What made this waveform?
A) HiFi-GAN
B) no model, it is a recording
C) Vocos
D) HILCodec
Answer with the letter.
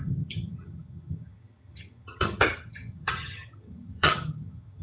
A